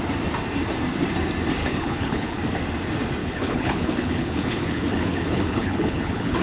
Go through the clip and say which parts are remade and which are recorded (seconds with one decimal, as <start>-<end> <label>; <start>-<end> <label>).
0.0-1.6 recorded; 1.6-2.4 remade; 2.4-3.2 recorded; 3.2-6.4 remade